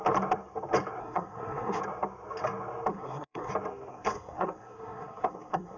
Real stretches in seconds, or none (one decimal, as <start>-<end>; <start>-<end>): 0.0-1.0; 1.8-2.9; 3.5-3.9